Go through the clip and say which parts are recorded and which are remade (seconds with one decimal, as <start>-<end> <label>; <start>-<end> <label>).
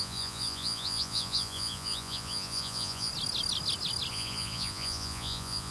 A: 0.0-3.1 remade; 3.1-4.1 recorded; 4.1-5.7 remade